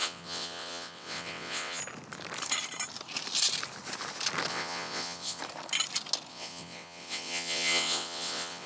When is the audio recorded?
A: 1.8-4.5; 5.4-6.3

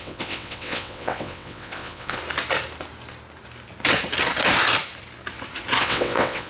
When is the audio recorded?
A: 2.2-5.8

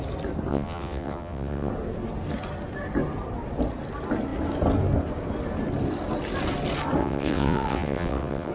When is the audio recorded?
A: 0.0-0.5; 1.7-7.0

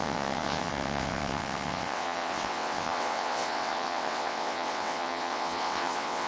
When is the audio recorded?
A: none

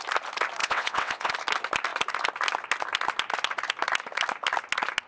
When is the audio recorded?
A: 0.0-0.6; 1.3-5.1

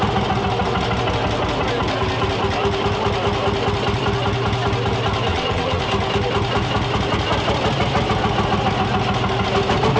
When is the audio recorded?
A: 0.0-5.3; 5.8-10.0